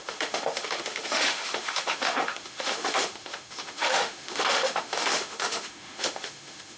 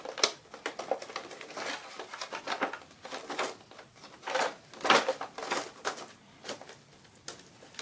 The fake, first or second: first